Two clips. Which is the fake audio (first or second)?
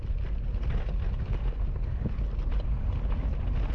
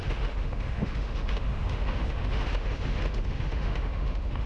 second